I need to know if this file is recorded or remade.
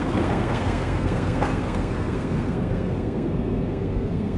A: remade